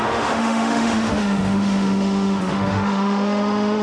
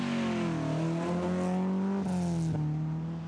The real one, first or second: second